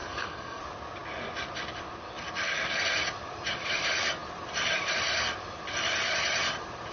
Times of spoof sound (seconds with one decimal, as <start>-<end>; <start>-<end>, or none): 0.0-0.6